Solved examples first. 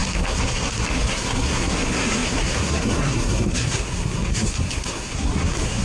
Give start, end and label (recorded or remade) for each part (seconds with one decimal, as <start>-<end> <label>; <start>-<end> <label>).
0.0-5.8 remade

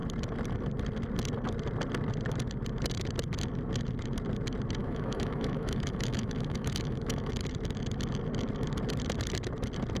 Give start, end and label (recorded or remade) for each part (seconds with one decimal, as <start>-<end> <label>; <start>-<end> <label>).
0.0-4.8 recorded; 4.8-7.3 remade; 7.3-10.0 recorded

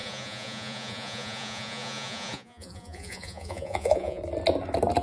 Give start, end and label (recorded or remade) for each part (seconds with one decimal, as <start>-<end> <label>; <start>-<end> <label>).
0.0-4.2 remade; 4.2-5.0 recorded